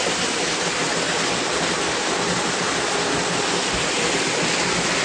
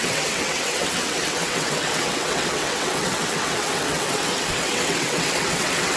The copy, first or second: second